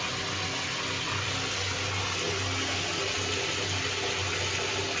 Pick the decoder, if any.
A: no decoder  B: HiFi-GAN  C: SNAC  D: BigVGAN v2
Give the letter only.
A